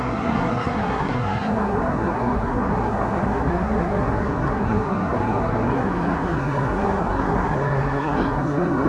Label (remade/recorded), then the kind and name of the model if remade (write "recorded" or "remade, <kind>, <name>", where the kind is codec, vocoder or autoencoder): remade, codec, SNAC